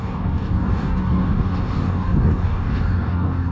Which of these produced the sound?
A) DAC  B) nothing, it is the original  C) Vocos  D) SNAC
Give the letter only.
A